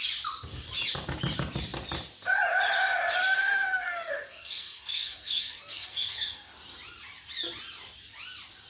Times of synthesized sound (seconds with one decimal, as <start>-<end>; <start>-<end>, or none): 3.2-6.5